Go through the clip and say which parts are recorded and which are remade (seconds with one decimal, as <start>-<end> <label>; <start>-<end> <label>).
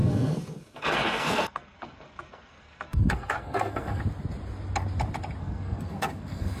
0.0-4.0 remade; 4.0-5.4 recorded; 5.4-6.6 remade